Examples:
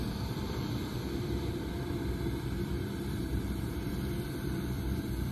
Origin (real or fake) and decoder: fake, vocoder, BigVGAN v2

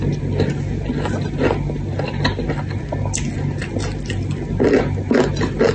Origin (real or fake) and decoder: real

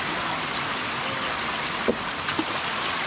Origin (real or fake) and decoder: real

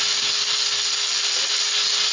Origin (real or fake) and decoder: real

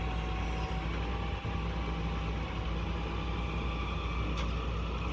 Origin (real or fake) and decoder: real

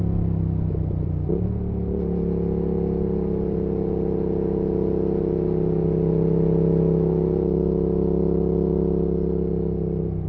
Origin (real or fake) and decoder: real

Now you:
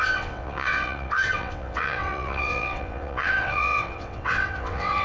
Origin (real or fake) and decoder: fake, vocoder, WaveNeXt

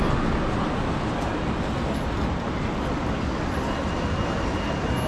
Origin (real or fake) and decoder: real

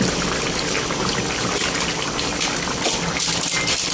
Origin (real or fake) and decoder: real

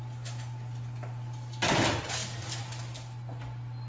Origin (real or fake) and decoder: real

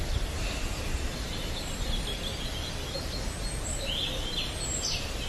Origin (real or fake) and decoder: real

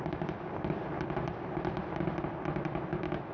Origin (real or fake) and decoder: real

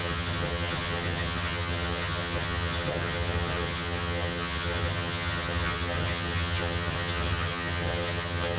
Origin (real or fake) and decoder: fake, vocoder, HiFi-GAN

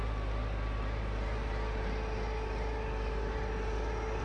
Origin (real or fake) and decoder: real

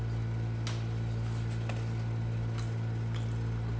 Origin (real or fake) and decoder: real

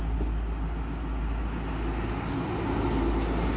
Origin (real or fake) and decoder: real